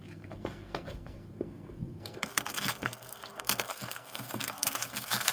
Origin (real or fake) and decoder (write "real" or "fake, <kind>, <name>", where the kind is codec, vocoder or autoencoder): fake, codec, SNAC